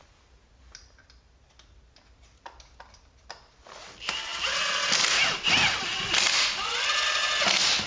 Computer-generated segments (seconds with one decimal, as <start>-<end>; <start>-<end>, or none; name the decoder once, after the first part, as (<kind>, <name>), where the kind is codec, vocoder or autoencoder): none